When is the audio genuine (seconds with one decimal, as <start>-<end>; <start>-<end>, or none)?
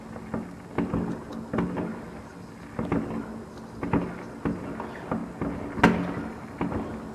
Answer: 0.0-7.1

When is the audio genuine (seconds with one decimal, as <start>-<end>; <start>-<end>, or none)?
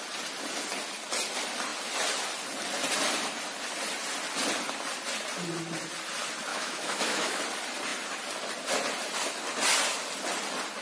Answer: 0.0-6.5; 7.4-10.8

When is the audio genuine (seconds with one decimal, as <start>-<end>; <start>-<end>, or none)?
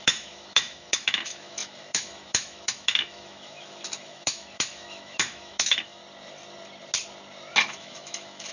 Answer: 6.0-7.6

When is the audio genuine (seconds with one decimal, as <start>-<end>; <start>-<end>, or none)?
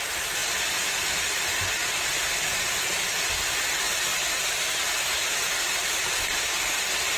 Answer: 0.0-4.1; 6.4-7.2